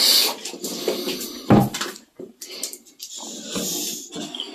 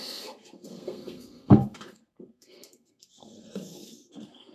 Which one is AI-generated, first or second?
second